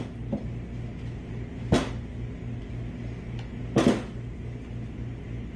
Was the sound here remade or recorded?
recorded